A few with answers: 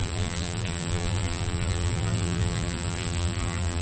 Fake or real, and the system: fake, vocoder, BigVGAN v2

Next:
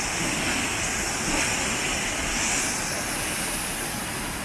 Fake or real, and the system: real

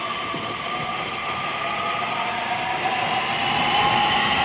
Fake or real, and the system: real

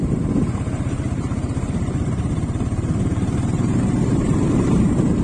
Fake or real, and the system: fake, vocoder, BigVGAN v2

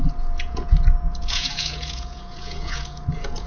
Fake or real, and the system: fake, vocoder, Vocos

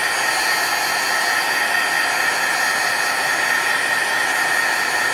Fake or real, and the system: real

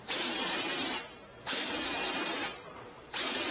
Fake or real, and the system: fake, vocoder, BigVGAN v2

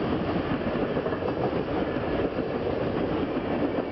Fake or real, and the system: real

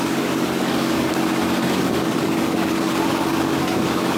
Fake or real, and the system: fake, codec, DAC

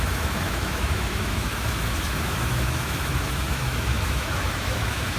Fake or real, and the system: fake, autoencoder, DAC-VAE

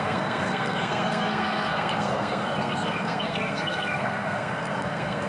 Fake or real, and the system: fake, codec, SNAC